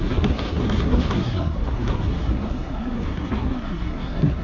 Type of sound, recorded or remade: remade